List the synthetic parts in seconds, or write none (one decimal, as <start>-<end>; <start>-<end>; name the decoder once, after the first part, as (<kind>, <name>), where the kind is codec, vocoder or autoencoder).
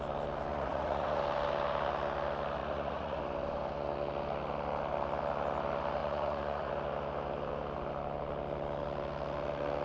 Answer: 0.5-1.2 (vocoder, Vocos); 2.6-3.2; 6.0-6.7